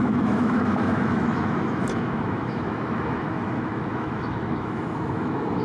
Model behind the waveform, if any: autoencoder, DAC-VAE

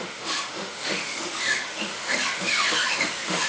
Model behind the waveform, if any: autoencoder, DAC-VAE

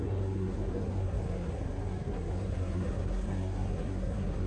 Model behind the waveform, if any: codec, SNAC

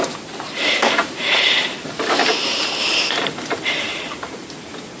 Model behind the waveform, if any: vocoder, BigVGAN v2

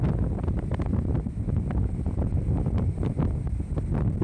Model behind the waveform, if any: vocoder, BigVGAN v2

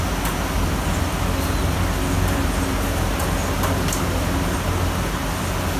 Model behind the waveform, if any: none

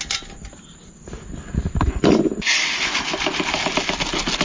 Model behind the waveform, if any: none